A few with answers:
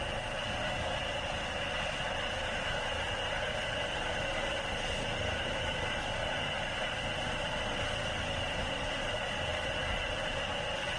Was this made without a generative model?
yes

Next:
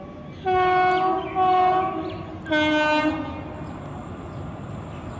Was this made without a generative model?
yes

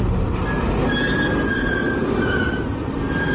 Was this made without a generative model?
yes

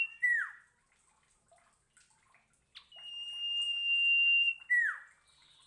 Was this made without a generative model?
yes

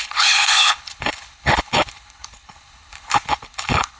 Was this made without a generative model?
no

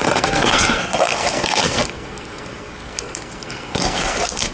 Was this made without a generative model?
no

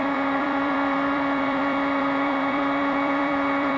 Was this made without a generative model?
no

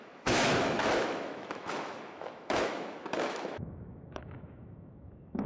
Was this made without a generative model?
no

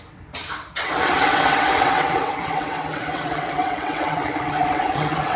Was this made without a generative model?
no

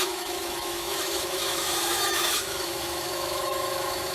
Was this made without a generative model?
no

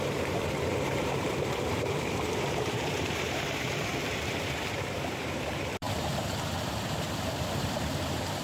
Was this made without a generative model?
no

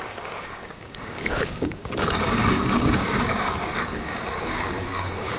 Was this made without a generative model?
no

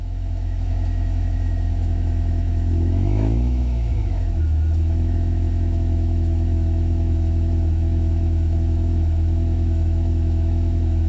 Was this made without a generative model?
no